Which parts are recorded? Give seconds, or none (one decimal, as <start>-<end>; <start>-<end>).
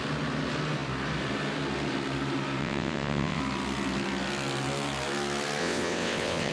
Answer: 0.0-2.6; 3.4-5.6